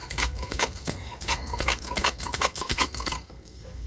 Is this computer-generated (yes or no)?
yes